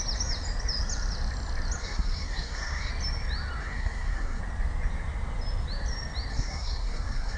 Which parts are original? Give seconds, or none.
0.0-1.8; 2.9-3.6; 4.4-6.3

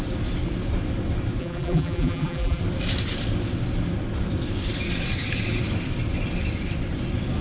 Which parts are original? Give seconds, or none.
0.0-1.4; 2.6-7.4

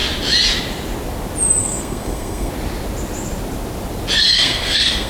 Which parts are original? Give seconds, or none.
0.0-1.6; 2.5-4.2

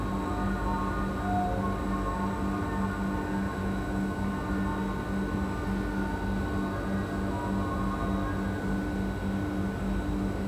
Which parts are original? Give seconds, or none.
0.0-3.6; 4.3-10.5

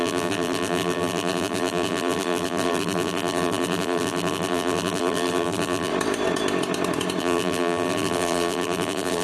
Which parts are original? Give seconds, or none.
5.9-7.2

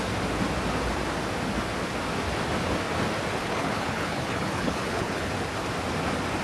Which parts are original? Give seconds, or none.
0.0-3.4; 5.3-6.4

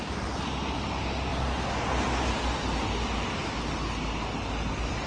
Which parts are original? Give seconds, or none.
0.0-5.1

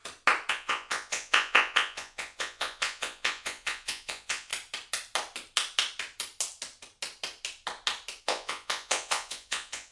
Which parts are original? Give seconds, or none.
0.0-0.5; 4.5-8.2